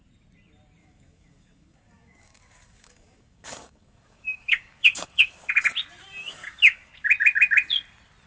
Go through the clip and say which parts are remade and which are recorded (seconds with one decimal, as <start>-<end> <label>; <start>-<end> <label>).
0.0-0.8 recorded; 0.8-5.5 remade; 5.5-6.2 recorded; 6.2-6.9 remade; 6.9-8.3 recorded